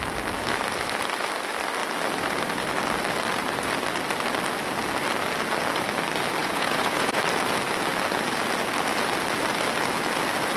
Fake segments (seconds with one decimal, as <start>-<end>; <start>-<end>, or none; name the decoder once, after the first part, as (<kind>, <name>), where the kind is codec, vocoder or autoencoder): 6.4-7.2 (vocoder, Vocos)